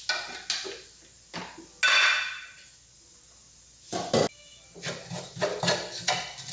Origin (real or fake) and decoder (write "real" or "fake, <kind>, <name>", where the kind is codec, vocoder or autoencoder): real